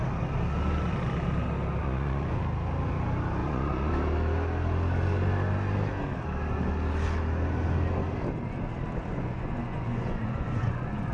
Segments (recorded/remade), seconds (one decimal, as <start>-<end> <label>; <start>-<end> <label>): 0.0-1.8 recorded; 1.8-2.4 remade; 2.4-3.4 recorded; 3.4-3.9 remade; 3.9-9.1 recorded; 9.1-11.1 remade